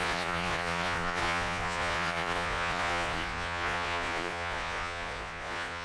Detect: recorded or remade remade